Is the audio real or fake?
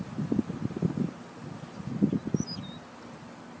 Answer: real